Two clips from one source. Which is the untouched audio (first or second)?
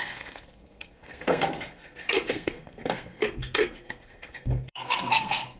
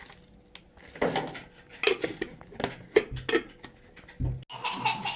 second